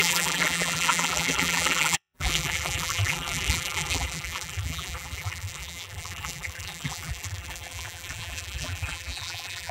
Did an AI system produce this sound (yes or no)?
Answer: yes